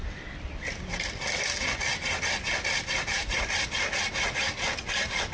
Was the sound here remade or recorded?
recorded